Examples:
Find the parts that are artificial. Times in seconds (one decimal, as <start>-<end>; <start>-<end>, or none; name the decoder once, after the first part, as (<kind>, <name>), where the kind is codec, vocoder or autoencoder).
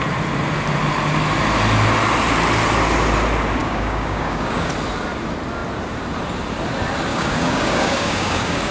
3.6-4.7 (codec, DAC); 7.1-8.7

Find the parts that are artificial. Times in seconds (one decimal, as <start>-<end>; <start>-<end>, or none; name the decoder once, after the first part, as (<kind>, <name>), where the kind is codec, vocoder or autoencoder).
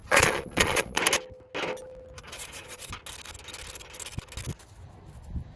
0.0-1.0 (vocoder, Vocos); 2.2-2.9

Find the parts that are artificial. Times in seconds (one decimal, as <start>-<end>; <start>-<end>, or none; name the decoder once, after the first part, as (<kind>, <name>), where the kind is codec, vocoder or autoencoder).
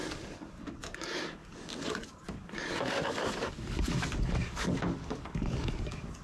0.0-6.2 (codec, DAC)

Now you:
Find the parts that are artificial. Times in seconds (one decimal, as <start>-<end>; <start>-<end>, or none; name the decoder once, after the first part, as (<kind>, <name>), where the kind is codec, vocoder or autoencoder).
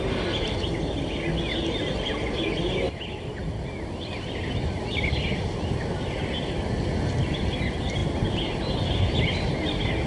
8.0-9.2 (vocoder, BigVGAN v2)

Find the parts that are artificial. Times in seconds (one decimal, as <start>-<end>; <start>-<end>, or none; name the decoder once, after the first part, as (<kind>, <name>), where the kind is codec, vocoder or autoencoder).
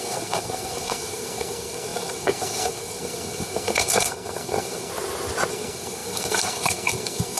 0.0-4.9 (codec, SNAC); 5.5-7.4